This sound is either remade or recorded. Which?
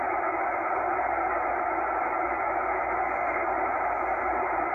recorded